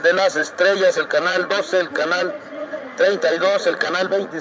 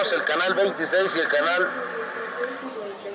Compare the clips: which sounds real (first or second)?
second